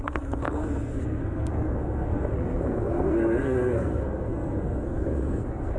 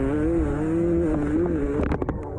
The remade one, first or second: first